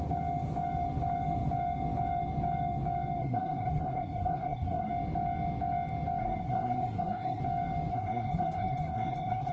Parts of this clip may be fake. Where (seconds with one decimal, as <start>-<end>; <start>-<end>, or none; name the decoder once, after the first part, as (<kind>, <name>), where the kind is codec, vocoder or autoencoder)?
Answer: 3.2-4.9 (codec, SNAC); 6.2-7.4; 7.9-9.5